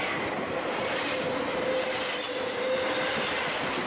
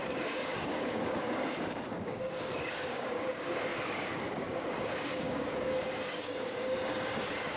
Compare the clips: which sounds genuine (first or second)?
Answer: first